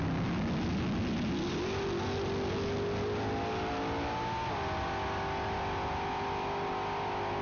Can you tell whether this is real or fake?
real